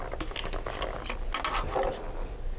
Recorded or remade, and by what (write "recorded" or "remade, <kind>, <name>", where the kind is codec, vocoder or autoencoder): recorded